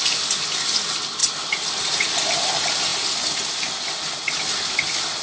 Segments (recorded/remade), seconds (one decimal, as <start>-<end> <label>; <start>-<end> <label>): 0.0-5.2 recorded